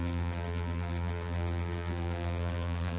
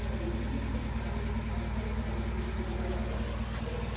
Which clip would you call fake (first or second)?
first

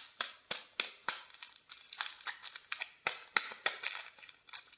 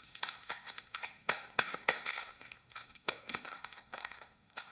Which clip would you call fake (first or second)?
second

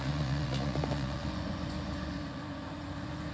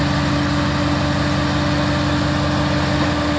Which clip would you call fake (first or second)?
first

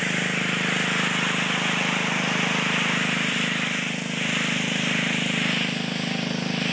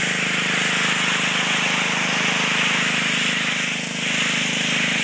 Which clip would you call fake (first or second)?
first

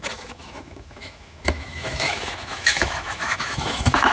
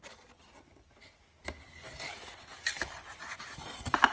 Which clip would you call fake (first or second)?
first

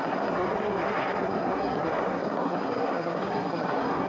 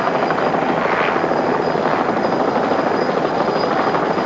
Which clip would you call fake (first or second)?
first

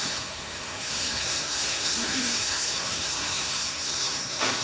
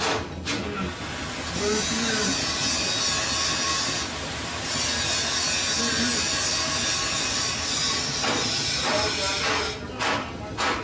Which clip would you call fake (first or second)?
first